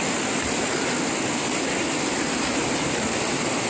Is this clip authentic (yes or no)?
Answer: yes